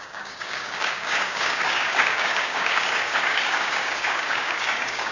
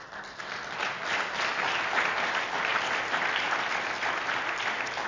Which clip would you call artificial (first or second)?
first